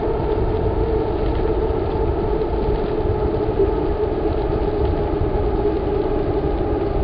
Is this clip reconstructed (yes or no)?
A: no